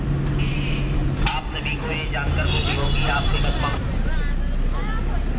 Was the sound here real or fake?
real